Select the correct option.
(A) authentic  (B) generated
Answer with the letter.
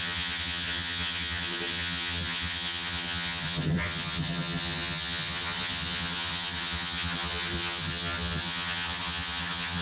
B